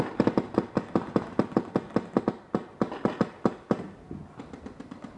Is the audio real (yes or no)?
yes